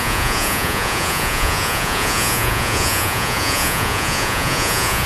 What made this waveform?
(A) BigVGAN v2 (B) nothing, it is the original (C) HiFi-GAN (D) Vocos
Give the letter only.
D